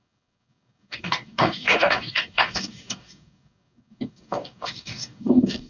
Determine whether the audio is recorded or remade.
remade